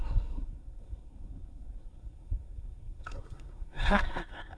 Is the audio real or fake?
fake